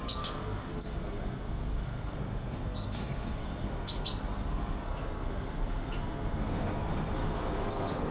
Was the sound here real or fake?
fake